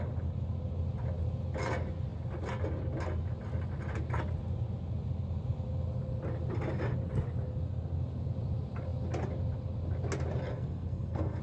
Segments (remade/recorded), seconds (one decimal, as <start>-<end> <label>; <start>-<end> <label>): 0.0-10.5 recorded; 10.5-11.4 remade